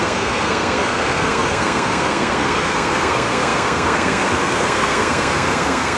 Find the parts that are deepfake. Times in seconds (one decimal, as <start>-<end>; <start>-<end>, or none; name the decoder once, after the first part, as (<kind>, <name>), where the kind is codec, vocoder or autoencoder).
0.0-6.0 (codec, SNAC)